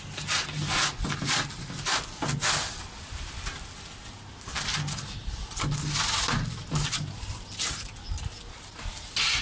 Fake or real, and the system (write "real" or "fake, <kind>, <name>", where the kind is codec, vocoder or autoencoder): real